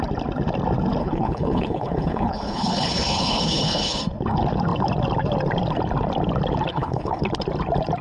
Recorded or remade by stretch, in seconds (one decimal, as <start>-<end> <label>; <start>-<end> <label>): 0.0-1.0 recorded; 1.0-4.0 remade; 4.0-6.7 recorded; 6.7-7.2 remade; 7.2-8.0 recorded

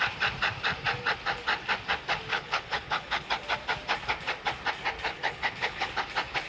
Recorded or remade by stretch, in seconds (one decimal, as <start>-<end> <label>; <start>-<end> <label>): 0.0-2.3 recorded; 2.3-3.3 remade; 3.3-5.1 recorded; 5.1-5.9 remade; 5.9-6.5 recorded